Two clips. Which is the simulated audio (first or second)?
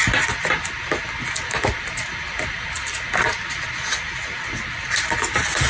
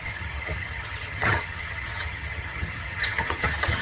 second